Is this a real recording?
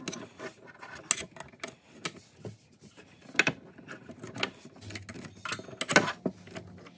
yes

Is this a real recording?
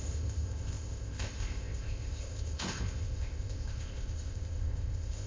no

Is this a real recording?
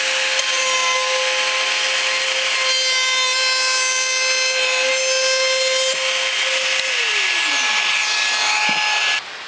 yes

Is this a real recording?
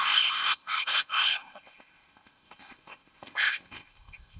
no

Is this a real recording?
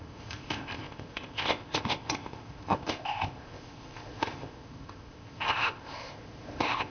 no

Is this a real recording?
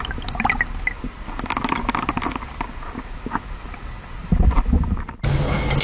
yes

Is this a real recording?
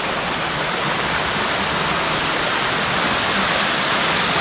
yes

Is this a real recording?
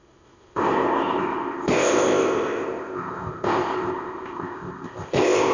no